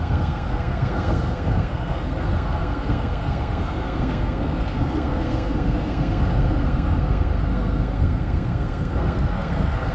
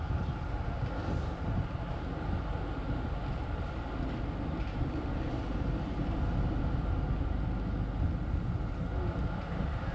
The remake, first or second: first